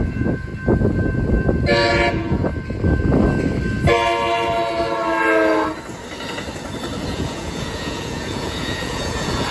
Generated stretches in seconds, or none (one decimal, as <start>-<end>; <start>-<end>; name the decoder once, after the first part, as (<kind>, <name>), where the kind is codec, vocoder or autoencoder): 0.0-0.5 (vocoder, Vocos); 2.1-2.5; 7.1-9.5